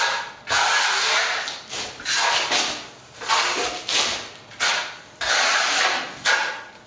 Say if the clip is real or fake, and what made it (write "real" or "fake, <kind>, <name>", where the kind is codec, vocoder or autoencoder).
real